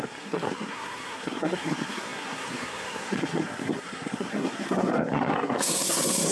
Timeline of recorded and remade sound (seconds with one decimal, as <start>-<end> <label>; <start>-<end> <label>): 0.0-6.3 remade